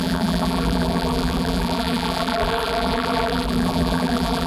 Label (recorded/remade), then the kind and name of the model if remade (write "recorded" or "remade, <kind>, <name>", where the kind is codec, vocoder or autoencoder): remade, vocoder, BigVGAN v2